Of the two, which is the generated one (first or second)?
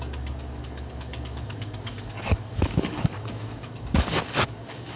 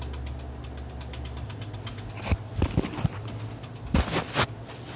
first